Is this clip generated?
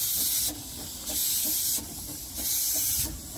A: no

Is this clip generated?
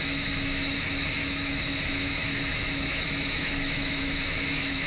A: yes